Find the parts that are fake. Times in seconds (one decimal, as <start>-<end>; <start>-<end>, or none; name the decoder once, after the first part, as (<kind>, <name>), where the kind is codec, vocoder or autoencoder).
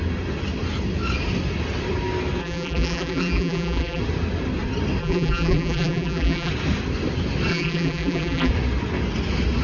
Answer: 2.4-4.0 (vocoder, BigVGAN v2); 5.0-6.5; 7.5-8.5